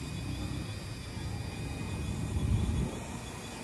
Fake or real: real